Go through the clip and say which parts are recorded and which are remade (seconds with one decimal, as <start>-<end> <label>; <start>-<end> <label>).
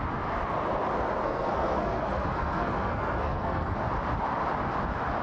0.0-1.2 recorded; 1.2-3.8 remade; 3.8-5.2 recorded